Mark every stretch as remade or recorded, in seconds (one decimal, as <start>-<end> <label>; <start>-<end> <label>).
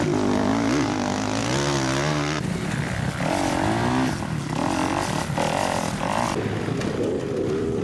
0.0-7.8 recorded